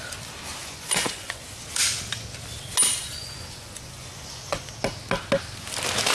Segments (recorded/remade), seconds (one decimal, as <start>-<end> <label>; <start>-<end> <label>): 0.0-0.6 recorded; 0.6-1.6 remade; 1.6-3.0 recorded; 3.0-4.7 remade; 4.7-6.1 recorded